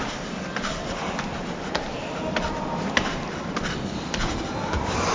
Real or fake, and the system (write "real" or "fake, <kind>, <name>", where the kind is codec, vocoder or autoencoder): real